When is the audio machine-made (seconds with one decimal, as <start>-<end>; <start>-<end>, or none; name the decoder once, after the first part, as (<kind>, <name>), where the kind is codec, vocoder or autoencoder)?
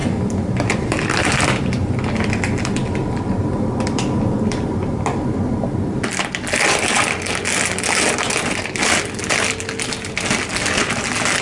0.0-1.2 (vocoder, BigVGAN v2); 2.8-7.4